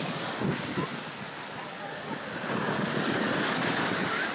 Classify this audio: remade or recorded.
remade